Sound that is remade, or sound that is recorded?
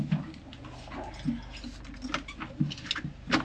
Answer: recorded